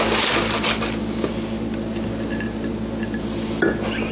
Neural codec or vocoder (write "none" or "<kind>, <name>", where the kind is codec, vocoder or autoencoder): none